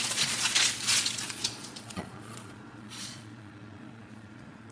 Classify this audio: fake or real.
fake